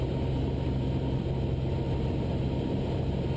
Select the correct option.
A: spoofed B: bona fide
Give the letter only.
B